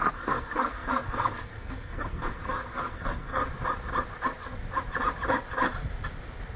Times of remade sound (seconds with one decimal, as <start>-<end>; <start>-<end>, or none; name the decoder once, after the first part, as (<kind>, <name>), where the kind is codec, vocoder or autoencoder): 0.0-3.4 (codec, SNAC)